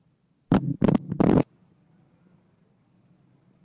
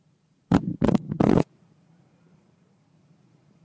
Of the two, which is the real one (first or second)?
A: first